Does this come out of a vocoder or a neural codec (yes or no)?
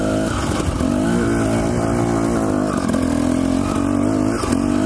no